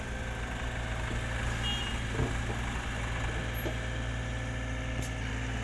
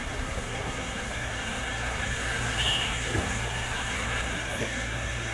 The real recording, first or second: first